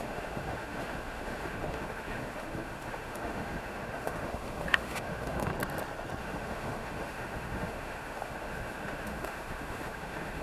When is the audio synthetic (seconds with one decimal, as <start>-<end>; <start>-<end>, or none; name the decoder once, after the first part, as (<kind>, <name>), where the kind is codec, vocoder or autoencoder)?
0.0-5.5 (autoencoder, DAC-VAE); 6.2-10.4